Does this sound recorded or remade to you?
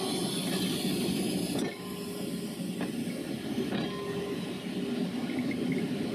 recorded